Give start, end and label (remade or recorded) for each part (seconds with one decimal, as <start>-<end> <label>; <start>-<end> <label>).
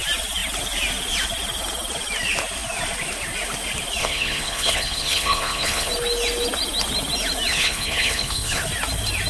0.0-4.0 recorded; 4.0-5.9 remade; 5.9-7.5 recorded; 7.5-8.6 remade; 8.6-9.3 recorded